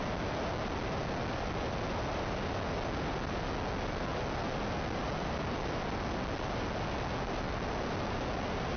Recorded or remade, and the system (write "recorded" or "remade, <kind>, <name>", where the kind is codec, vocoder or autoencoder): recorded